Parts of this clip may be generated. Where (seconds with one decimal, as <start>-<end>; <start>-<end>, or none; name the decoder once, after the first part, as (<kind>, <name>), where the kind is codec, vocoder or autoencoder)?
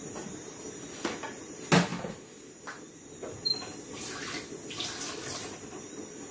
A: none